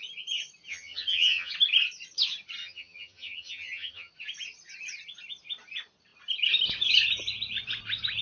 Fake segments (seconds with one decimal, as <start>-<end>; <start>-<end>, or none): 0.7-1.5; 2.6-4.1